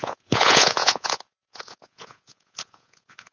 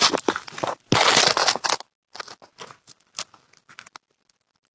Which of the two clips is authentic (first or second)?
second